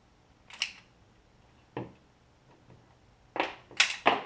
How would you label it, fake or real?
real